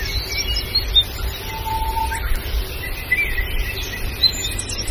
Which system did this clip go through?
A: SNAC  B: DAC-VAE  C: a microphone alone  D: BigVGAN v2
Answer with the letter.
C